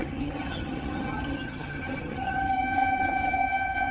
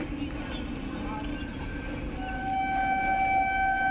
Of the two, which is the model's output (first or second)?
first